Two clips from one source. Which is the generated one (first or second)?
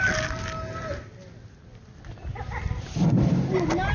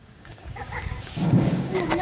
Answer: second